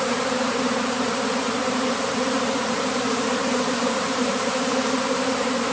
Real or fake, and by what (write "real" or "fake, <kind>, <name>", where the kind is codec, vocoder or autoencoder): fake, vocoder, BigVGAN v2